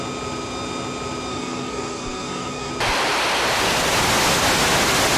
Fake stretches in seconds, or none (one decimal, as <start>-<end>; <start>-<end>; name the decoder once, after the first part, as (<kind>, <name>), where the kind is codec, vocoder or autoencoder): 1.3-2.7 (codec, SNAC)